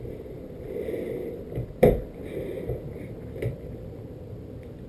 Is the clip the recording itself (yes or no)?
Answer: no